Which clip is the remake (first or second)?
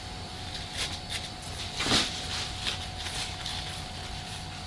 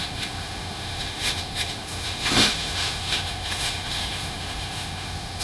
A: second